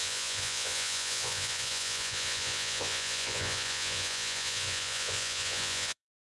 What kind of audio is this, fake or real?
fake